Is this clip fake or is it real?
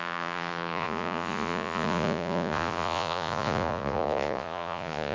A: fake